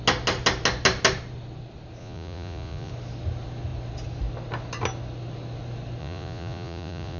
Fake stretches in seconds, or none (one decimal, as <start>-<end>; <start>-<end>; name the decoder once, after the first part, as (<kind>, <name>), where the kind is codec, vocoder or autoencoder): 2.0-2.9 (vocoder, Vocos); 6.0-7.2